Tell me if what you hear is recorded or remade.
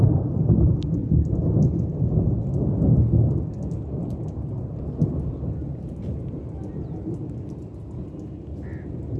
recorded